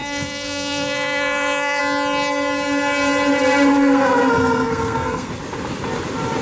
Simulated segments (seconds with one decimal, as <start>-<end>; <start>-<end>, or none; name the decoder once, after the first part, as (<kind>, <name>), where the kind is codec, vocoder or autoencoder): 0.0-1.8 (codec, SNAC); 3.7-5.3